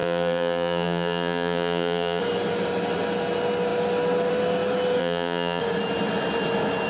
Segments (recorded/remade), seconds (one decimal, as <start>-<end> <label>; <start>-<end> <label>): 0.0-2.2 remade; 2.2-5.0 recorded; 5.0-5.6 remade; 5.6-6.9 recorded